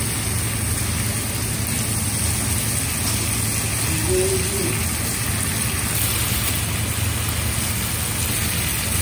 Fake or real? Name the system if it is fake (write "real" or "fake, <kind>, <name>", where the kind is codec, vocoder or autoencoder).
real